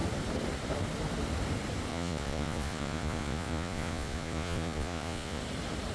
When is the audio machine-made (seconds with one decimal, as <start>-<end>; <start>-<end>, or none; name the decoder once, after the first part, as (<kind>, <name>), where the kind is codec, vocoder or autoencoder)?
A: 1.9-5.4 (vocoder, Vocos)